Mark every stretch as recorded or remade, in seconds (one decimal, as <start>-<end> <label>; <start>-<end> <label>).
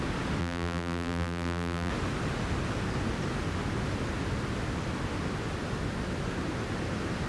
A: 0.0-0.4 recorded; 0.4-1.9 remade; 1.9-7.3 recorded